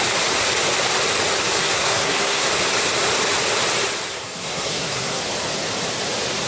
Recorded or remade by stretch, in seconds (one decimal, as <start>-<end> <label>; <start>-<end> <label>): 0.0-1.6 recorded; 1.6-2.5 remade; 2.5-4.1 recorded; 4.1-5.2 remade; 5.2-6.5 recorded